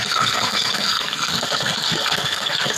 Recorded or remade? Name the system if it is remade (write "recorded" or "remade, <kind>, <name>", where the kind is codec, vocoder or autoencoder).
remade, codec, SNAC